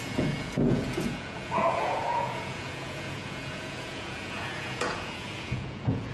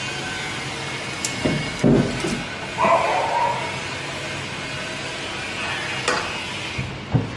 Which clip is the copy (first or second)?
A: first